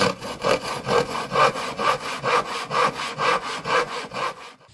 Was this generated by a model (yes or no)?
yes